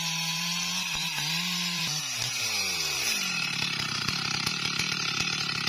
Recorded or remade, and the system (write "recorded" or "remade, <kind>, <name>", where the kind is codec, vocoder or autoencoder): remade, vocoder, BigVGAN v2